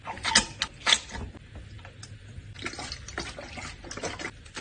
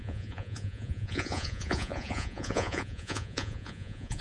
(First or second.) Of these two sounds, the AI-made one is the second